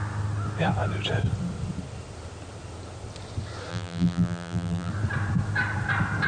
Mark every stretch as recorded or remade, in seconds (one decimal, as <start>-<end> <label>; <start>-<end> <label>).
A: 0.0-3.7 recorded; 3.7-4.9 remade; 4.9-6.3 recorded